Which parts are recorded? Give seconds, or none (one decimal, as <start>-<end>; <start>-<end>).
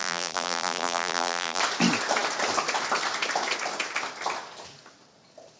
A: 1.6-5.6